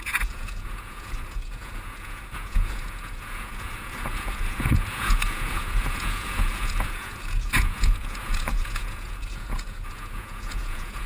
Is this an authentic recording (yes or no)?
no